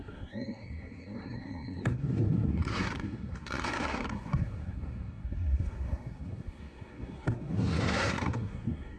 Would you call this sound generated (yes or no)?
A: yes